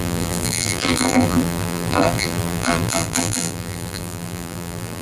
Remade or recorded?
remade